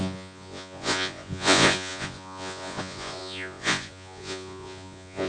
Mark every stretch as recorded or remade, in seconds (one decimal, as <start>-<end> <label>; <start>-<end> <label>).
0.0-5.3 remade